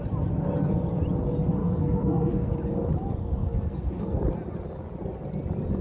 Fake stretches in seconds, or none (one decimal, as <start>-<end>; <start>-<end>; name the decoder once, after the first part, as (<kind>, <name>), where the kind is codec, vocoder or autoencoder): 1.6-2.5 (codec, SNAC); 3.4-4.2

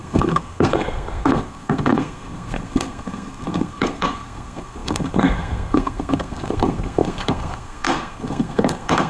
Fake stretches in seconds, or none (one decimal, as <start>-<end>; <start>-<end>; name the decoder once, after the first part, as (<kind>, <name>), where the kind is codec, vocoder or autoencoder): 0.0-9.1 (codec, SNAC)

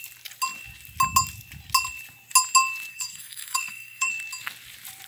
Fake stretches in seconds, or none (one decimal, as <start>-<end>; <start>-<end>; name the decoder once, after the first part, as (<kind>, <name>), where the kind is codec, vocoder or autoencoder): 2.9-4.1 (codec, SNAC)

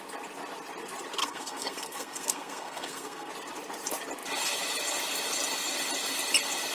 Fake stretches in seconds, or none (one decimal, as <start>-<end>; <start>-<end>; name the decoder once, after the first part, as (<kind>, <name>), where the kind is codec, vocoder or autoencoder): 1.2-3.3 (codec, SNAC)

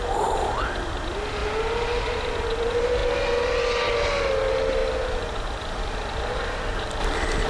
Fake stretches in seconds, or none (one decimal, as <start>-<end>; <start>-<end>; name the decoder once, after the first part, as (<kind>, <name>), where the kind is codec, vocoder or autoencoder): none

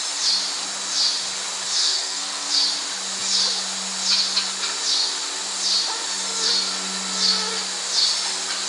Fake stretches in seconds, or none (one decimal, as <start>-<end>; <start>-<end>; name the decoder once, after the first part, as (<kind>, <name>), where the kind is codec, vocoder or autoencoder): 1.8-2.5 (codec, SNAC)